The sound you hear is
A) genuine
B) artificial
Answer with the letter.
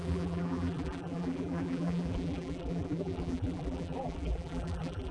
B